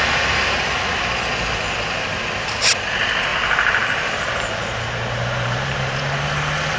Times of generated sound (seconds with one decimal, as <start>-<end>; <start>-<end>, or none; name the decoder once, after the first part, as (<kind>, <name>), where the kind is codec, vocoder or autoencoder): 3.3-6.0 (vocoder, BigVGAN v2)